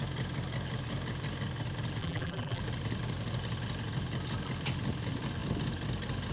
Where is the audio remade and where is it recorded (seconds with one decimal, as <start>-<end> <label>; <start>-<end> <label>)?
0.0-2.0 recorded; 2.0-2.6 remade; 2.6-6.3 recorded